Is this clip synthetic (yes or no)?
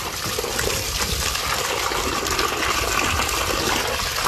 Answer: no